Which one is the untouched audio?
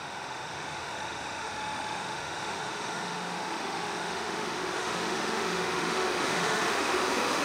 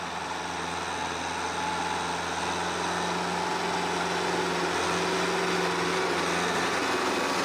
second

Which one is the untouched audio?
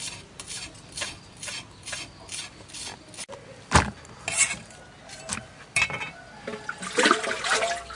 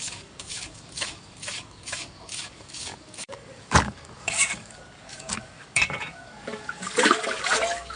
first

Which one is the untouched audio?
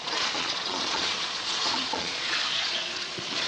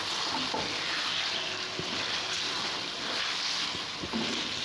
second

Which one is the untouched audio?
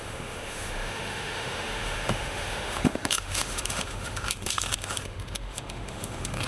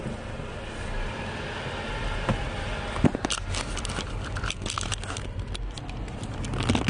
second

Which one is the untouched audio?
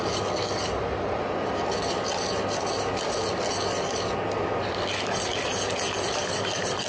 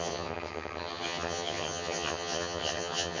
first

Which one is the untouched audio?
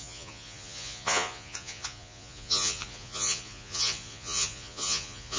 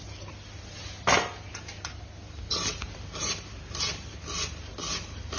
second